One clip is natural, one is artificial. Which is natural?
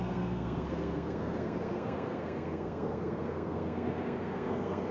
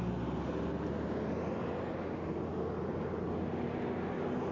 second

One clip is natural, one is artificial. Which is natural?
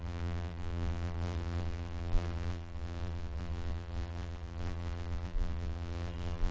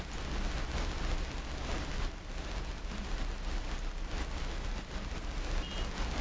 second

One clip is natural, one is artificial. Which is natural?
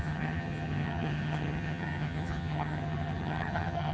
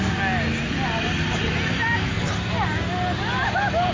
second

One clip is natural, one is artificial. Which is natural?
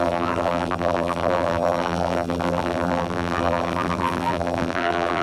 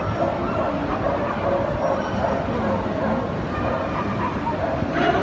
second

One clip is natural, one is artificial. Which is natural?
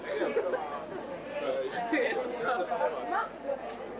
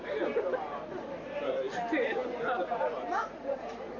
first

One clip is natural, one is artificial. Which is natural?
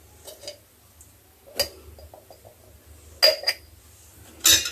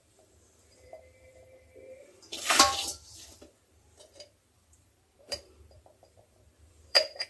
first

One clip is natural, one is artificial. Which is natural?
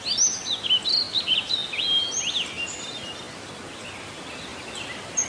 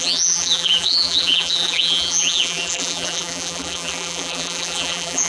first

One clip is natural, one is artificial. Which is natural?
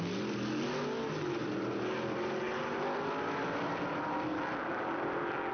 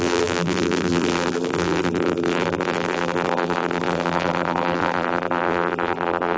first